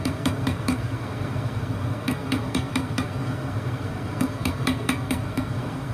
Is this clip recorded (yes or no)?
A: no